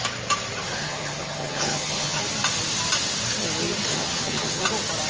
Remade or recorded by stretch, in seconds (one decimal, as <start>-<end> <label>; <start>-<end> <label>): 0.0-0.8 recorded; 0.8-2.2 remade; 2.2-3.9 recorded; 3.9-4.6 remade; 4.6-5.1 recorded